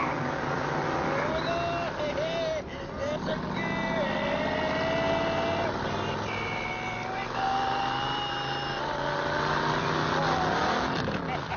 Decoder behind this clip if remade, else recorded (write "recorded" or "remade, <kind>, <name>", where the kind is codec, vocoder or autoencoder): recorded